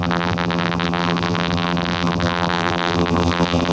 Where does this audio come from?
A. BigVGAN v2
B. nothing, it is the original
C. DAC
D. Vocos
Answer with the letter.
A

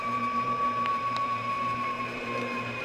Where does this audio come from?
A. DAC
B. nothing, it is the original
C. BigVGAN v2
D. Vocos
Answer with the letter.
C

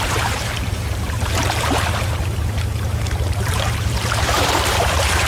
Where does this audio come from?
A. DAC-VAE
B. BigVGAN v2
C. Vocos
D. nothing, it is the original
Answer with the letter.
B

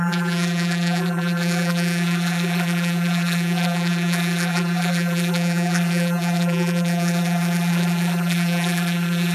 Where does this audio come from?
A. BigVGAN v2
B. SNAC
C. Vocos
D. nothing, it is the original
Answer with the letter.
A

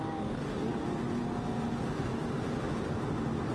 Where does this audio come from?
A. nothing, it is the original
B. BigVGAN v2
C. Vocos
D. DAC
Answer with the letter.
A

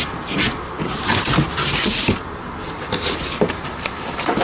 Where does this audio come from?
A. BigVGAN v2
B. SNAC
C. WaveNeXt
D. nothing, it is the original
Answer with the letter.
A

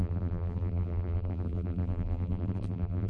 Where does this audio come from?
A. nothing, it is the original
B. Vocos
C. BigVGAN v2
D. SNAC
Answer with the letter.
C